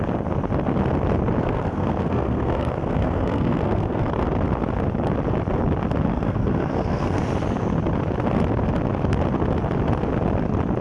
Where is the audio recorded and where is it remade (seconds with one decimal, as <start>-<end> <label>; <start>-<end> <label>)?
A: 0.0-1.4 recorded; 1.4-4.1 remade; 4.1-6.1 recorded; 6.1-7.2 remade; 7.2-10.8 recorded